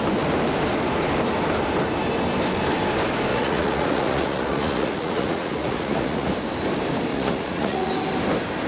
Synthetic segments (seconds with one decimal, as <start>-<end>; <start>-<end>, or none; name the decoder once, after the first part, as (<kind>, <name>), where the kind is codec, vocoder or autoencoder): 3.3-6.3 (vocoder, Vocos); 7.1-7.9